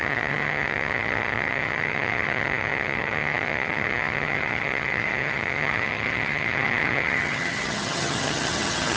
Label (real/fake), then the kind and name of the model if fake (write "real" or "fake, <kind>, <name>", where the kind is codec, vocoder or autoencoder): fake, vocoder, HiFi-GAN